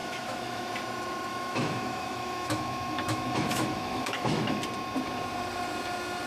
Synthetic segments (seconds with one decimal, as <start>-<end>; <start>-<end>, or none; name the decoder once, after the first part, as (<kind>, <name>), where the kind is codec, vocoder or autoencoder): 0.0-0.7 (autoencoder, DAC-VAE); 1.3-4.6